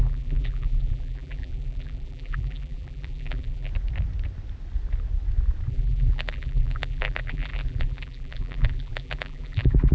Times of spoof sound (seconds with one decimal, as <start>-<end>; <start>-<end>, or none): 0.0-3.7; 5.7-9.9